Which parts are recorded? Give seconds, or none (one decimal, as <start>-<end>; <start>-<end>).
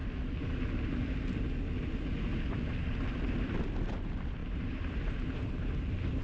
0.0-4.4; 5.7-6.2